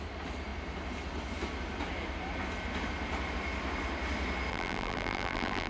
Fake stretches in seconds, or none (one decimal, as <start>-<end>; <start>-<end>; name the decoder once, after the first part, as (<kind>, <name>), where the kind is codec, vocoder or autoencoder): 4.5-5.7 (vocoder, BigVGAN v2)